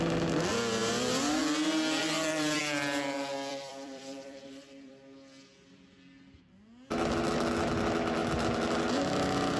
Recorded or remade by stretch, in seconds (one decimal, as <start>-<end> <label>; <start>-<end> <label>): 0.0-0.8 recorded; 0.8-1.4 remade; 1.4-2.0 recorded; 2.0-2.6 remade; 2.6-3.5 recorded; 3.5-4.9 remade; 4.9-9.6 recorded